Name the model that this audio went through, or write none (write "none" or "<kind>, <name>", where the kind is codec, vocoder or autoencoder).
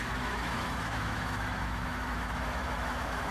autoencoder, DAC-VAE